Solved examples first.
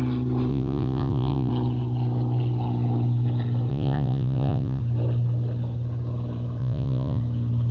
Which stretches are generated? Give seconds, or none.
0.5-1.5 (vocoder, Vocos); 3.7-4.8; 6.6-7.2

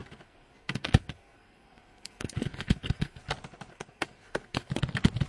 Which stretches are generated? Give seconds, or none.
0.0-3.2 (codec, SNAC); 3.7-4.7

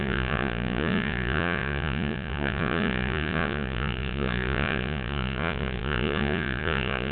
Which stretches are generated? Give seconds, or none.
0.0-7.1 (vocoder, Vocos)

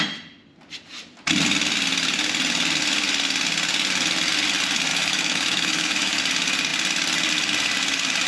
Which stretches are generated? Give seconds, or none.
4.9-6.2 (autoencoder, DAC-VAE)